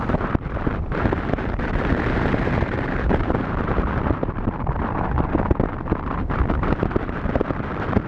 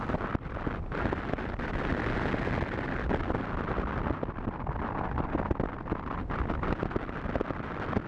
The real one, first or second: second